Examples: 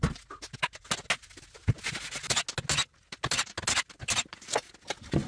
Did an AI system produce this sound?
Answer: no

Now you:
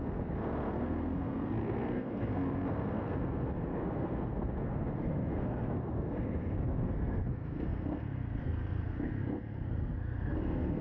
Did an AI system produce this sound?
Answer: yes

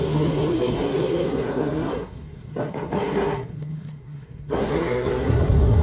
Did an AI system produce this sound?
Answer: yes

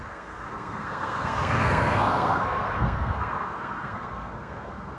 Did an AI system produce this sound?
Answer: yes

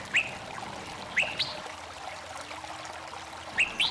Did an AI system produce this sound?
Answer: no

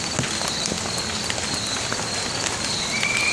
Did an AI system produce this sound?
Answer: no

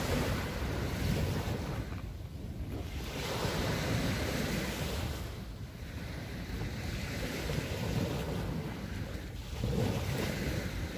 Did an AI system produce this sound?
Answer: no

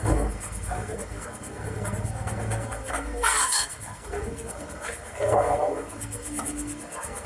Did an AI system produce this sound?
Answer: yes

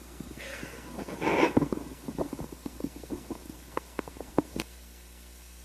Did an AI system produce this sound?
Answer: yes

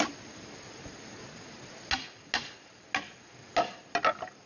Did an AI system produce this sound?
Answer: no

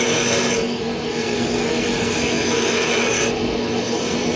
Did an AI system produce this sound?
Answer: yes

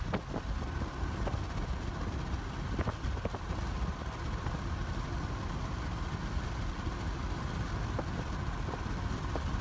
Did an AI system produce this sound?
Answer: no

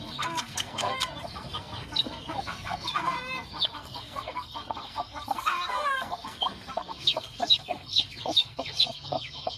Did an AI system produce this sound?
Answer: yes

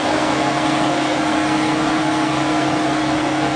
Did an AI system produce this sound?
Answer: yes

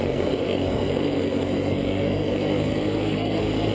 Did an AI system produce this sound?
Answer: yes